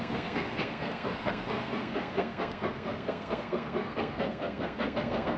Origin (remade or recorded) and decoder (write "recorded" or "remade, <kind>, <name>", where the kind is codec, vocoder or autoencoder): remade, codec, SNAC